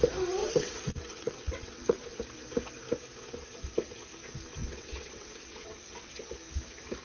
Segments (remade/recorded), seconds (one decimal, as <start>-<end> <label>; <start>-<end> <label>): 0.0-0.4 recorded; 0.4-2.2 remade; 2.2-4.6 recorded; 4.6-6.1 remade; 6.1-7.0 recorded